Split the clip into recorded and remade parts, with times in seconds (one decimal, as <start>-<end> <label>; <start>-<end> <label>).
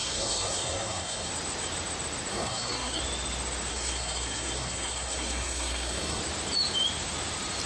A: 0.0-1.3 remade; 1.3-2.3 recorded; 2.3-3.0 remade; 3.0-3.7 recorded; 3.7-6.2 remade; 6.2-7.7 recorded